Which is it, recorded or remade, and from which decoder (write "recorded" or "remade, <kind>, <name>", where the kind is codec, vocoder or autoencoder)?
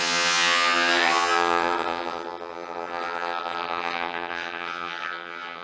remade, vocoder, HiFi-GAN